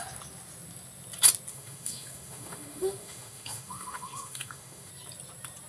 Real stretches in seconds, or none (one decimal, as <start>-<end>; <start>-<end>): 0.0-1.5; 4.9-5.7